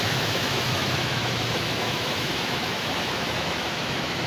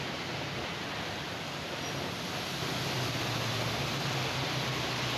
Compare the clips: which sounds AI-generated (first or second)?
first